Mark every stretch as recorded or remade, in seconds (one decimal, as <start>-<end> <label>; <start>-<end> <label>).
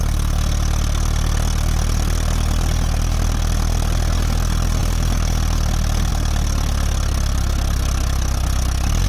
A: 0.0-9.1 recorded